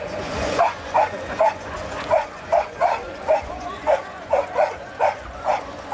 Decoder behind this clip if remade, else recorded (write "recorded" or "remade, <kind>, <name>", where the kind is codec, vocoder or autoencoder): remade, vocoder, Vocos